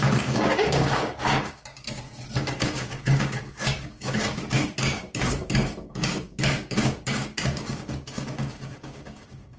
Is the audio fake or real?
fake